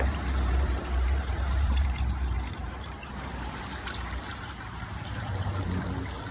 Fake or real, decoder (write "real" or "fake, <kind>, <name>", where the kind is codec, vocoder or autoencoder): fake, vocoder, BigVGAN v2